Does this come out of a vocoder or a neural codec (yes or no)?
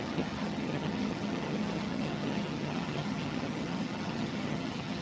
yes